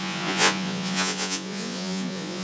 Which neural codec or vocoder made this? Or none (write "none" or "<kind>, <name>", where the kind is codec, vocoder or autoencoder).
vocoder, Vocos